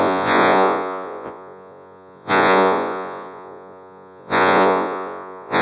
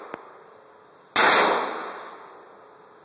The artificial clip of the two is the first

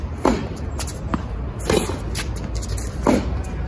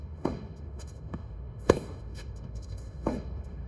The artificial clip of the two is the second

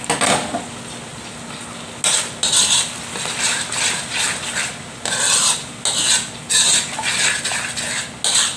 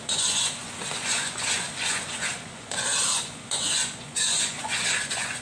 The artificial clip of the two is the second